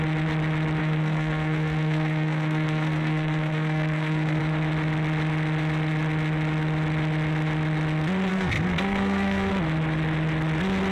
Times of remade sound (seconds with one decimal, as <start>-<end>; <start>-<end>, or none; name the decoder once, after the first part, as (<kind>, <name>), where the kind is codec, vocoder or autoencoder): 0.8-4.4 (codec, SNAC); 8.3-9.5